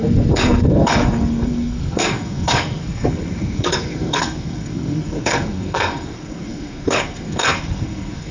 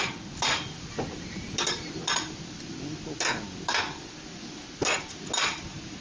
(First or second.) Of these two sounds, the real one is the second